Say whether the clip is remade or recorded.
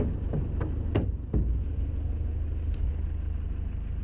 recorded